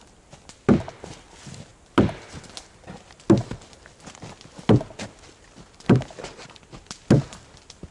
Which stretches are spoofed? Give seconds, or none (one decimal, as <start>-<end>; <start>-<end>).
none

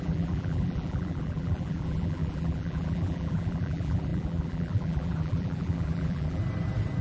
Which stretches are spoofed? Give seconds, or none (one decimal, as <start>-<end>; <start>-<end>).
0.0-6.4

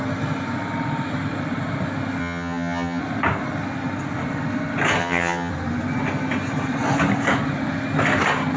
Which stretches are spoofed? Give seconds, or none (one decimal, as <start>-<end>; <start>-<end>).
2.2-3.0; 5.0-5.5

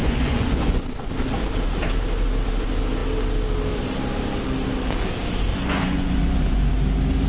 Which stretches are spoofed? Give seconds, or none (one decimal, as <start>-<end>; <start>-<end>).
0.0-0.9; 5.5-6.7